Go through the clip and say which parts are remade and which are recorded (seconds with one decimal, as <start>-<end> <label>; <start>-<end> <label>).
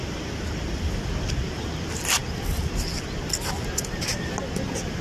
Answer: 0.0-5.0 recorded